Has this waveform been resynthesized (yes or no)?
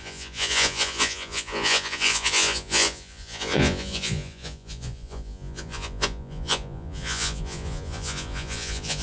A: yes